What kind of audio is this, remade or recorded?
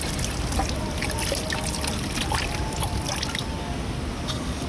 recorded